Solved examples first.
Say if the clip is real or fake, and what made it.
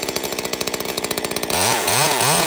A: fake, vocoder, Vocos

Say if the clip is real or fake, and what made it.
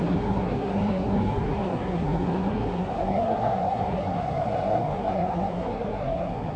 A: fake, codec, SNAC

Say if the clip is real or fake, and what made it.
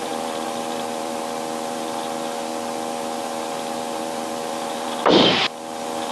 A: fake, vocoder, BigVGAN v2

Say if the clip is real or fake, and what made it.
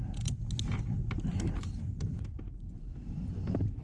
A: real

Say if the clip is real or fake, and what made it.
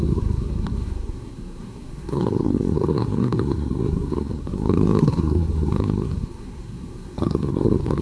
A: fake, codec, SNAC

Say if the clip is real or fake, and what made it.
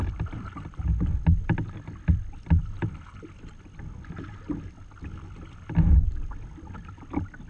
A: real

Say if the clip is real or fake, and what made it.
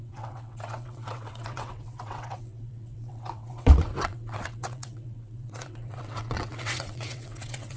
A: fake, vocoder, WaveNeXt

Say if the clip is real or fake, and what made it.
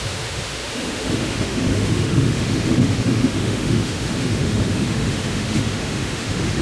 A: fake, autoencoder, DAC-VAE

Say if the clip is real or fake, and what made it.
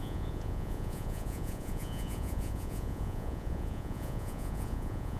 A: fake, vocoder, Vocos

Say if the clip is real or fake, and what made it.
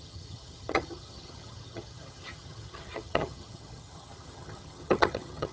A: fake, vocoder, HiFi-GAN